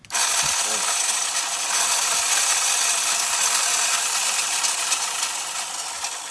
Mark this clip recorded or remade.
recorded